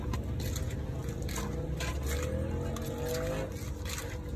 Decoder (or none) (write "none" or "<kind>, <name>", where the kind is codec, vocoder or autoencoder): none